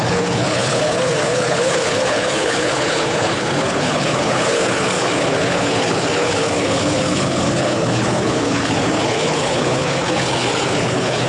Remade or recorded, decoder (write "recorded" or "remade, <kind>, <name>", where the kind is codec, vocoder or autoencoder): remade, codec, HILCodec